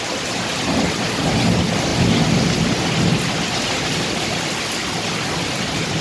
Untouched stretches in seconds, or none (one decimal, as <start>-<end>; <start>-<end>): 0.0-6.0